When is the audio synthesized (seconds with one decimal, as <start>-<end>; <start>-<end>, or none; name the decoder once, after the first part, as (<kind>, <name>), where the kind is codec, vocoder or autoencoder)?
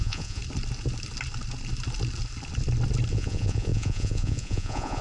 0.0-0.4 (vocoder, Vocos); 3.1-5.0